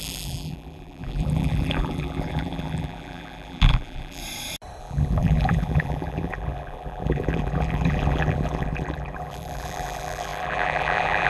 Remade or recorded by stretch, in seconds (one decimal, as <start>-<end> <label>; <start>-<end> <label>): 0.0-4.2 remade; 4.2-4.8 recorded; 4.8-11.3 remade